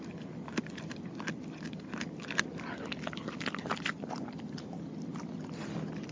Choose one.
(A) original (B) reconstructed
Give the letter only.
A